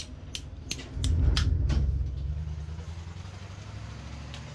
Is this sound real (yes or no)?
yes